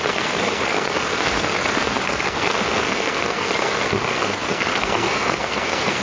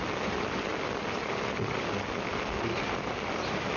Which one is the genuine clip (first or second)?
second